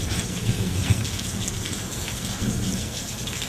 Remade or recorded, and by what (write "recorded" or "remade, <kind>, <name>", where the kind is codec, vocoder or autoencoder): remade, codec, SNAC